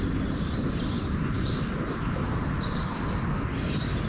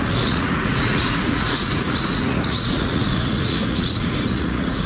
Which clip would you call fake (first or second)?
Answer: second